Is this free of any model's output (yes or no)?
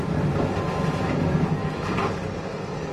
yes